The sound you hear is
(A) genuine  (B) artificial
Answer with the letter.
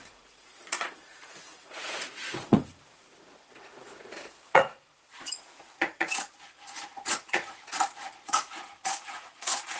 B